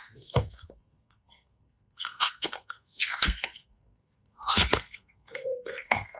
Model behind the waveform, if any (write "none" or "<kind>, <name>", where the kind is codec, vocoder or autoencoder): codec, SNAC